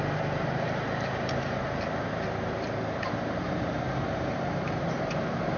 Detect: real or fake fake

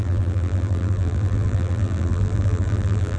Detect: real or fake fake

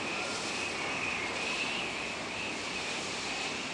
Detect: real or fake real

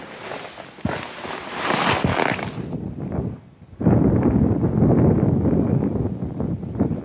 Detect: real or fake real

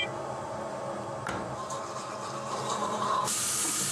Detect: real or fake fake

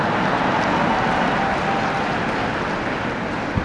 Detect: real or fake real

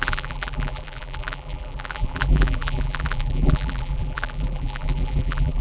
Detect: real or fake fake